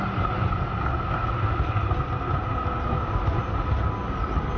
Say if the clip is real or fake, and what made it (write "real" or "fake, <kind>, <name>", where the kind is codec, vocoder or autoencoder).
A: real